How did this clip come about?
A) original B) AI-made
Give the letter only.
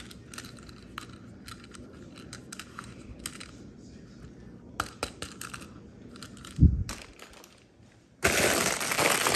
A